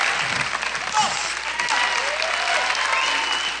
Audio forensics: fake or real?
real